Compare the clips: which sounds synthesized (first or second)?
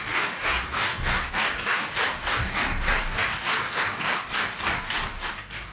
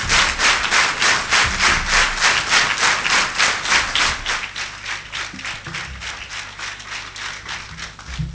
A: first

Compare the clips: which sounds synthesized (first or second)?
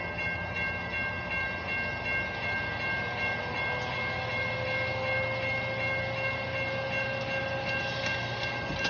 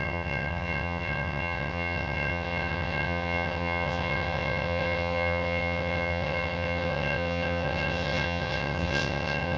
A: second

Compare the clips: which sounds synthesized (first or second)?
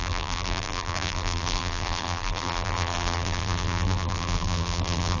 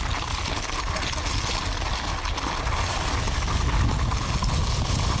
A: first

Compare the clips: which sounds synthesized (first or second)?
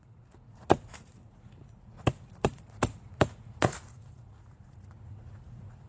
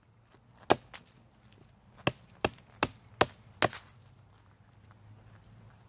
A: first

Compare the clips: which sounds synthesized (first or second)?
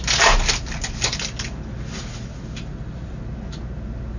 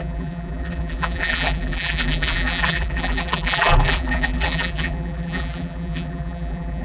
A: second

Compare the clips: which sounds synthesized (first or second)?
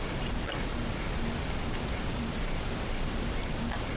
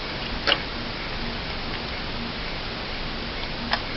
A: first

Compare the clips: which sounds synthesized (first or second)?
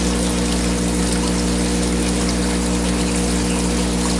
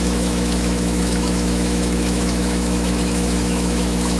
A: second